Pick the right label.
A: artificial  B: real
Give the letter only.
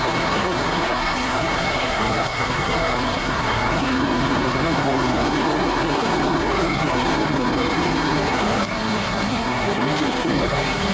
A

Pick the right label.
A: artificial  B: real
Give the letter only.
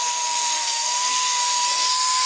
A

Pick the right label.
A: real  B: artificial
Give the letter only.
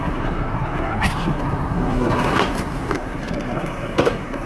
B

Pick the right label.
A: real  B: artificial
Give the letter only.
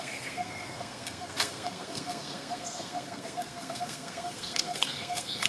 B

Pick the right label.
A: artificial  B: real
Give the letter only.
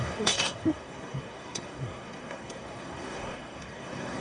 A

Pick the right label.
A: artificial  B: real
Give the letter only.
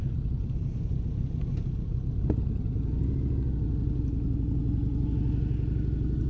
B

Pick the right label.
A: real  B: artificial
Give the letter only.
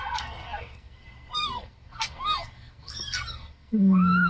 B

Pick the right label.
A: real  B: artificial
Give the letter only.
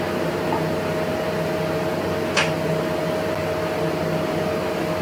A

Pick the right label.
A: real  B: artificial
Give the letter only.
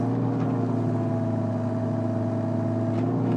A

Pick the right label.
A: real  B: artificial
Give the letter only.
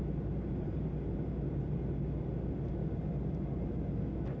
A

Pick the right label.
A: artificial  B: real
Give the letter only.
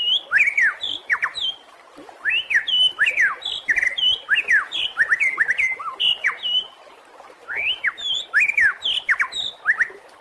B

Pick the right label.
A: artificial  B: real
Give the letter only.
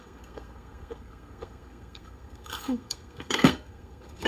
A